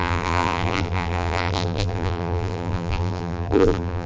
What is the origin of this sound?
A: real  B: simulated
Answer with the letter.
B